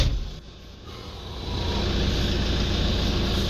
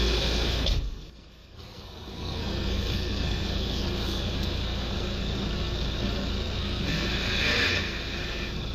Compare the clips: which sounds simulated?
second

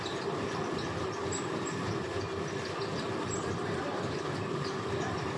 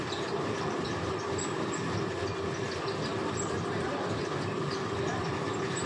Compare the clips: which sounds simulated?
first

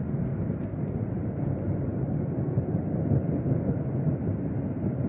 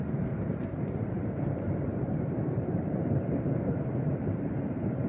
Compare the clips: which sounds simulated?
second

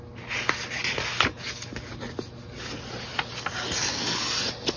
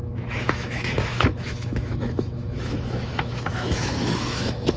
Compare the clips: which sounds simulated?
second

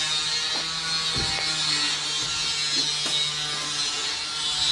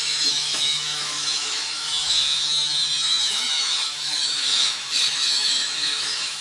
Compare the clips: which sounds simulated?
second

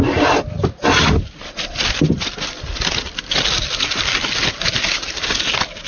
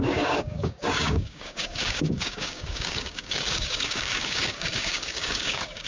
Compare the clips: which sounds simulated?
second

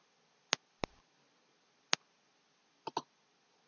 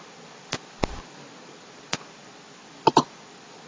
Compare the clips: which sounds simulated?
second